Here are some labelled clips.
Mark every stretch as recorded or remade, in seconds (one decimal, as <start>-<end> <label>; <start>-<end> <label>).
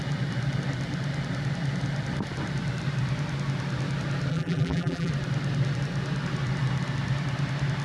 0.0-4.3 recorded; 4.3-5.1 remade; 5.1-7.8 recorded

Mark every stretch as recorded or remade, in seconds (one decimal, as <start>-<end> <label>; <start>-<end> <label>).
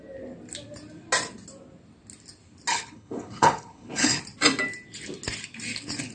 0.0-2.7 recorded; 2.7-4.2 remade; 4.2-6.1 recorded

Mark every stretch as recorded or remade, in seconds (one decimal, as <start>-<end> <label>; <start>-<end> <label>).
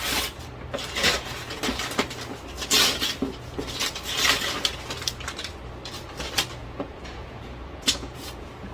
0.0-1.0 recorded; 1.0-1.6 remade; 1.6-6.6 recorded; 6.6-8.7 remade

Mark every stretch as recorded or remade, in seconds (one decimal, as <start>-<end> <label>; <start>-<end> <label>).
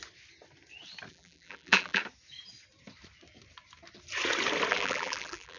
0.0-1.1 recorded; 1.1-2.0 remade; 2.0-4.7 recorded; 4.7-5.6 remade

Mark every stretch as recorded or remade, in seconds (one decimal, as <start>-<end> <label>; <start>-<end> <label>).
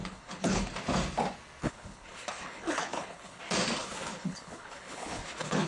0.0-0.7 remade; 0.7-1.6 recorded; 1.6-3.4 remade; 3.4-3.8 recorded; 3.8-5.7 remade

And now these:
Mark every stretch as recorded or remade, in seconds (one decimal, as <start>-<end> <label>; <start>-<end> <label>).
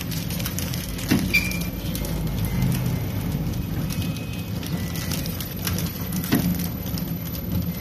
0.0-7.8 recorded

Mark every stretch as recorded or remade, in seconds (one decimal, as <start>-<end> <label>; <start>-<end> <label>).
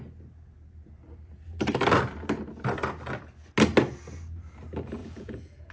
0.0-5.0 recorded; 5.0-5.7 remade